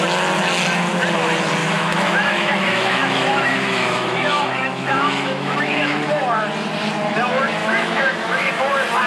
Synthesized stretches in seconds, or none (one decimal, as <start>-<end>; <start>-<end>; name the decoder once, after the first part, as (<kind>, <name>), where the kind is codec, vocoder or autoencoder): 1.6-6.1 (autoencoder, DAC-VAE); 7.6-8.5